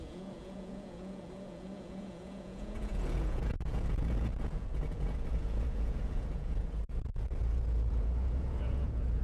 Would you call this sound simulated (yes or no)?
yes